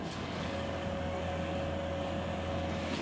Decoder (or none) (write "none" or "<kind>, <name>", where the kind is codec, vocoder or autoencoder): codec, DAC